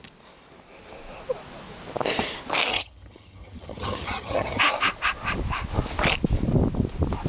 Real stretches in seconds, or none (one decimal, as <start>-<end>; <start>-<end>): 0.0-2.7; 4.6-7.3